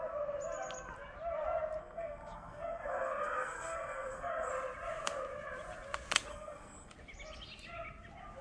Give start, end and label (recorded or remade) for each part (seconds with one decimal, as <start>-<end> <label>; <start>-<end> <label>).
0.0-1.8 recorded; 1.8-4.5 remade; 4.5-6.3 recorded; 6.3-6.9 remade; 6.9-8.4 recorded